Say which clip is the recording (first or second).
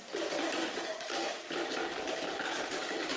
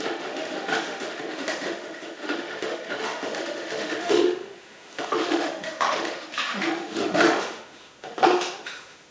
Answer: first